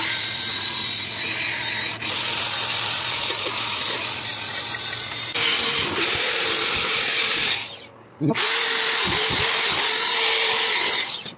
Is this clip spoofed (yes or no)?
no